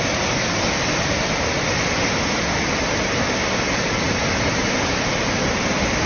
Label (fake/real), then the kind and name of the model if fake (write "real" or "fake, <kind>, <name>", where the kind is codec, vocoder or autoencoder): real